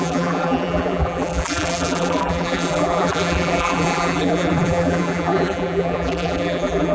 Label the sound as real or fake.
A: fake